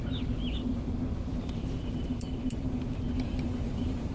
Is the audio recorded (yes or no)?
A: yes